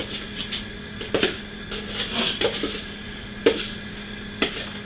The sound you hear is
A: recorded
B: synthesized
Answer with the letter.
A